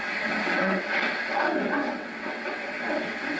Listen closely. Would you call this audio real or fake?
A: fake